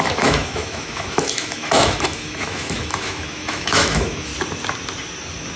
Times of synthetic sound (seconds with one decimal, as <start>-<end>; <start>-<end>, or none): 0.0-4.3